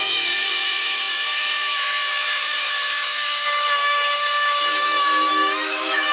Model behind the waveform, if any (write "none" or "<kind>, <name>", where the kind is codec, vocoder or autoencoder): autoencoder, DAC-VAE